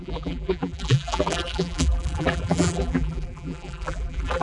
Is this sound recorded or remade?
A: remade